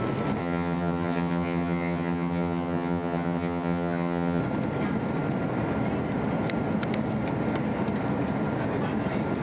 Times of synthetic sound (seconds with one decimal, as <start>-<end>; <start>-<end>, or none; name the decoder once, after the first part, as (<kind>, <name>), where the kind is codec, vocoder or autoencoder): 0.4-4.4 (vocoder, HiFi-GAN)

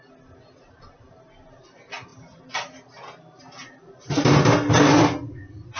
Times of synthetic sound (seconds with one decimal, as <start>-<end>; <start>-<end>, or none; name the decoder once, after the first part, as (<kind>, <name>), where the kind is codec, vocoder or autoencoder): none

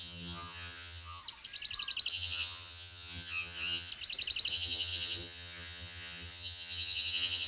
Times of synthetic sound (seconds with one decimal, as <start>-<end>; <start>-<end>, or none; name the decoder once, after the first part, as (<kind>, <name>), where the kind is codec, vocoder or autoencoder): 0.0-1.2 (vocoder, HiFi-GAN); 2.1-3.9; 4.5-7.5

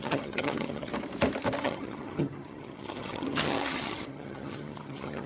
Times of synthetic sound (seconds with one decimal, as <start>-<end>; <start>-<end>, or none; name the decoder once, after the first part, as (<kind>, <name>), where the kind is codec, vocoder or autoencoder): 0.0-0.9 (vocoder, HiFi-GAN); 1.6-5.3